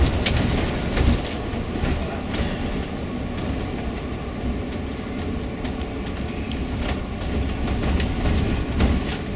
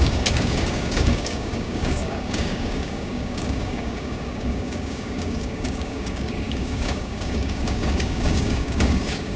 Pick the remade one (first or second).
second